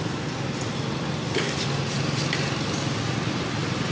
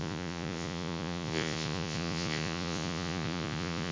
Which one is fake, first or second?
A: second